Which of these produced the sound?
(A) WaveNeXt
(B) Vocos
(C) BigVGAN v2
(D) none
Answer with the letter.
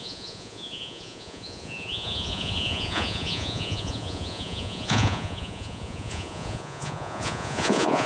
B